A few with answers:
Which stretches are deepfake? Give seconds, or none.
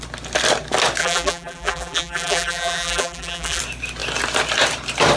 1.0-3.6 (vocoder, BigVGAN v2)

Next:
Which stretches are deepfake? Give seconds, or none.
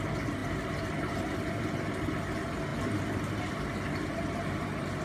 0.4-1.5 (vocoder, BigVGAN v2); 2.7-5.0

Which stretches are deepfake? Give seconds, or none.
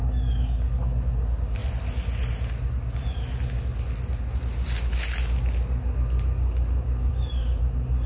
7.1-8.1 (vocoder, BigVGAN v2)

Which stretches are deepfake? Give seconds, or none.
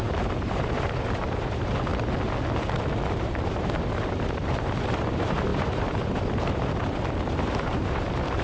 0.0-1.9 (vocoder, BigVGAN v2); 3.2-8.4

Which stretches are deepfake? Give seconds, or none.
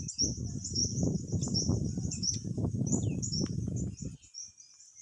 0.8-3.8 (vocoder, BigVGAN v2)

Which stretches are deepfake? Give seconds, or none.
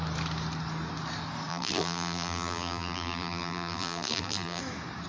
1.5-4.6 (vocoder, BigVGAN v2)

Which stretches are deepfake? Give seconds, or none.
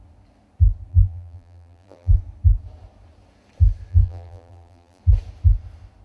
0.9-2.2 (vocoder, BigVGAN v2); 3.9-5.0